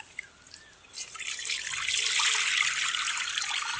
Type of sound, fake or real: real